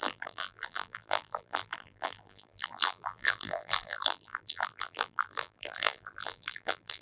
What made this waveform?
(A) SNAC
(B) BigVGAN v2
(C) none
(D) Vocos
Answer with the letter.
B